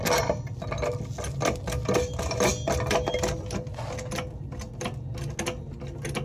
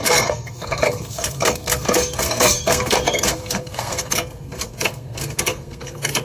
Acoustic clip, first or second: first